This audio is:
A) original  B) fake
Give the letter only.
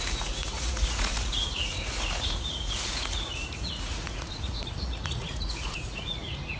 B